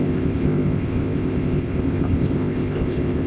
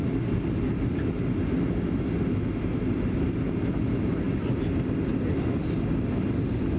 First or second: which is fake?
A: first